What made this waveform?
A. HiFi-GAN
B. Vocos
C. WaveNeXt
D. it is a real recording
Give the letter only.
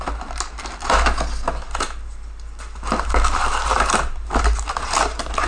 D